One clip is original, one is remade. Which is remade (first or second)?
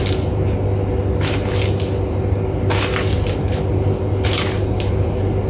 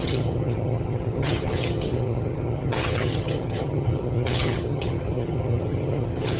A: second